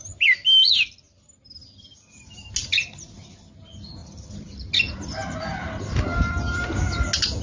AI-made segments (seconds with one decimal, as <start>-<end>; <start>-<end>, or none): none